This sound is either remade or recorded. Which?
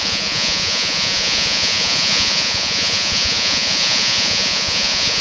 remade